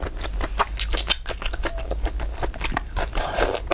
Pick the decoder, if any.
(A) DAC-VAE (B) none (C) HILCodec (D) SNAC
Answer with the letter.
B